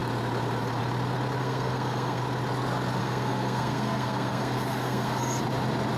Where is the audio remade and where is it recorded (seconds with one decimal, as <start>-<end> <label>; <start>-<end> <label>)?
0.0-1.4 recorded; 1.4-2.2 remade; 2.2-3.0 recorded; 3.0-5.4 remade; 5.4-6.0 recorded